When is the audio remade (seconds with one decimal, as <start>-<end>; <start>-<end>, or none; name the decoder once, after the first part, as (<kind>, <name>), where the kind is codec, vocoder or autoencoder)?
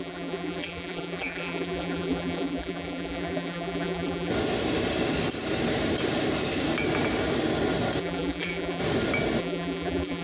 0.0-4.3 (vocoder, BigVGAN v2); 8.0-8.8; 9.4-10.2